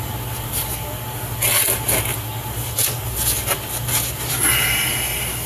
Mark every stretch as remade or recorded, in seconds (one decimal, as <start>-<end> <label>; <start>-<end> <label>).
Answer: 0.0-5.5 recorded